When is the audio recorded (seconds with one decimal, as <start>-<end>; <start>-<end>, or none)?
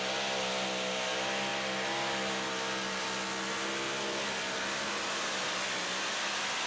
0.0-6.7